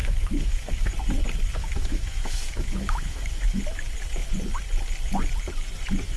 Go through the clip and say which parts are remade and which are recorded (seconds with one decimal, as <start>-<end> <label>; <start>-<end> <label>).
0.0-0.9 remade; 0.9-1.6 recorded; 1.6-3.6 remade; 3.6-6.2 recorded